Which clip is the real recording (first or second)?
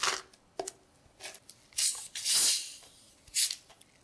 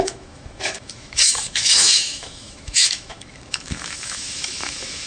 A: first